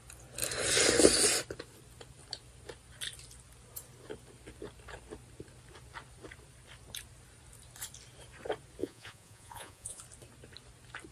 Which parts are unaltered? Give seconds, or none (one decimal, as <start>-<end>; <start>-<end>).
0.0-8.8; 10.0-11.1

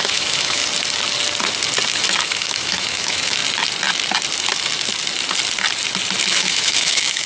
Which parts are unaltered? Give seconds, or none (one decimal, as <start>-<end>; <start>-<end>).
0.6-2.2; 3.4-6.2